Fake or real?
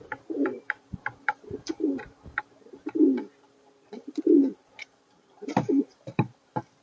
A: fake